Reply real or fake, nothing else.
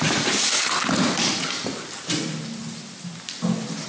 real